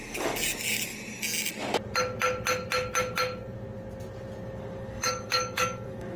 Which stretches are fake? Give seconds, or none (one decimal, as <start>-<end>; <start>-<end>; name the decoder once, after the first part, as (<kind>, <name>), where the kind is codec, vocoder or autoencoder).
0.0-0.9 (codec, DAC); 4.6-6.2